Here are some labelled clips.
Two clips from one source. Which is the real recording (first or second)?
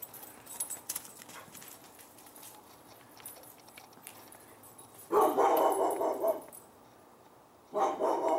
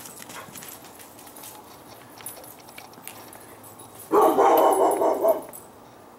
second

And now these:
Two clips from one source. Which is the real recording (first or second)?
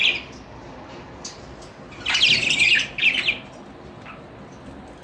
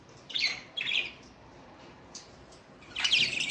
first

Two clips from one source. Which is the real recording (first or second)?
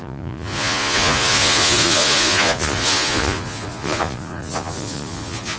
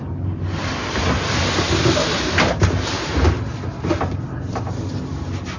second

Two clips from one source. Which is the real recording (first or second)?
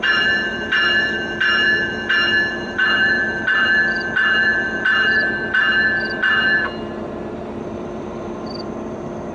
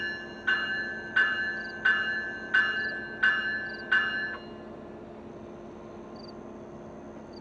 second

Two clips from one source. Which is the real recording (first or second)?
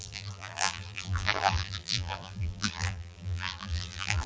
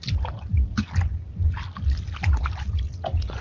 second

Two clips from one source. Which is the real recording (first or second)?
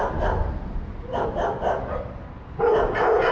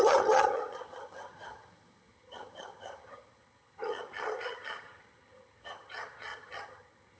first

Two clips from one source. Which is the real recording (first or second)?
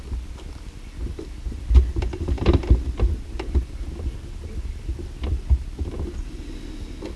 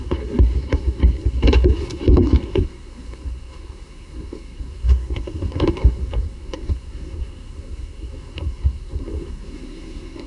first